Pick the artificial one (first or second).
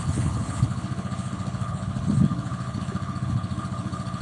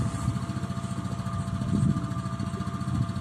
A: first